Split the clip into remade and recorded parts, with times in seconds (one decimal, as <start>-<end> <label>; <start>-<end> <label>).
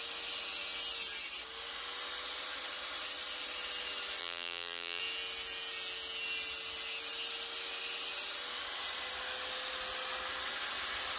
0.0-4.2 recorded; 4.2-5.0 remade; 5.0-11.2 recorded